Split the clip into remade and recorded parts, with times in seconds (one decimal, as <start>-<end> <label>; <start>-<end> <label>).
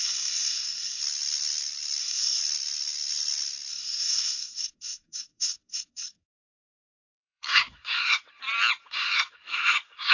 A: 0.0-1.0 remade; 1.0-2.0 recorded; 2.0-2.4 remade; 2.4-3.7 recorded; 3.7-8.3 remade; 8.3-8.9 recorded; 8.9-10.1 remade